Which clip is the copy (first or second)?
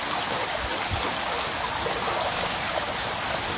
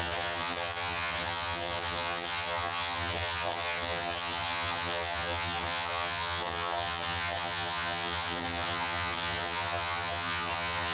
second